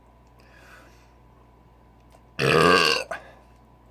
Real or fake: real